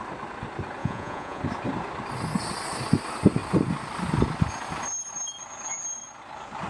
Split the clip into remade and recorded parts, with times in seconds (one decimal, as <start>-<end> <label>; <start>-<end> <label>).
0.0-0.8 recorded; 0.8-1.4 remade; 1.4-6.7 recorded